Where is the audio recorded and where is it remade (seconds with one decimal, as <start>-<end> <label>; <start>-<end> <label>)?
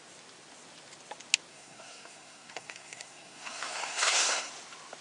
0.0-1.5 recorded; 1.5-4.5 remade; 4.5-5.0 recorded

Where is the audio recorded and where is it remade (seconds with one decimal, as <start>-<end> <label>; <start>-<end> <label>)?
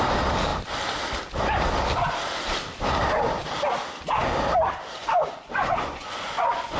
0.0-5.0 recorded; 5.0-6.8 remade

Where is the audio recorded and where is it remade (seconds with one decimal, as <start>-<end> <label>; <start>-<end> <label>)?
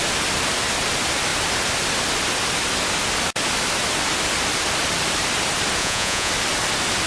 0.0-5.8 recorded; 5.8-6.3 remade; 6.3-7.1 recorded